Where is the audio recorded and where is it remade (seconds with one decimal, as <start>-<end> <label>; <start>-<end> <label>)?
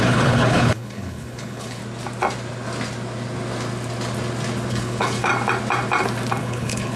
0.0-1.8 remade; 1.8-4.7 recorded; 4.7-5.3 remade; 5.3-6.4 recorded; 6.4-7.0 remade